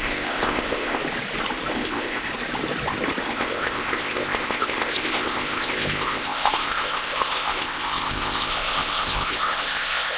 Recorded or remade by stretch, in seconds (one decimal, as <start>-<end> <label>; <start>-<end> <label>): 0.0-1.0 remade; 1.0-1.7 recorded; 1.7-2.3 remade; 2.3-3.2 recorded; 3.2-10.2 remade